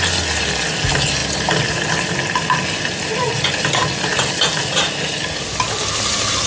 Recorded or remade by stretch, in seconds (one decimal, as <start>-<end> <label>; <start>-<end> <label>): 0.0-6.5 recorded